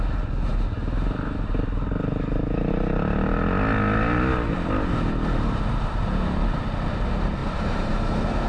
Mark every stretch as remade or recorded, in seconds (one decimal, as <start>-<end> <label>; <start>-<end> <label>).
0.0-8.5 recorded